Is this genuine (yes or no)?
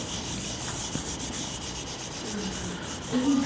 yes